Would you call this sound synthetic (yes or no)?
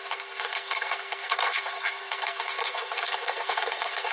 yes